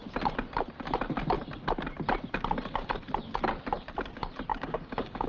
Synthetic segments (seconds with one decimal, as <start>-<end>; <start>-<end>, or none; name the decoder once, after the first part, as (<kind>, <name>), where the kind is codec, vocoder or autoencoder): 4.5-5.3 (codec, DAC)